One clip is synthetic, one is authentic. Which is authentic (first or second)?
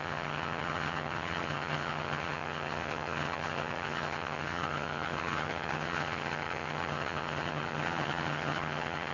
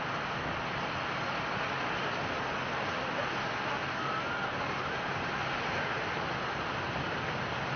second